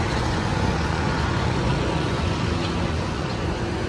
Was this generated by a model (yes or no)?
yes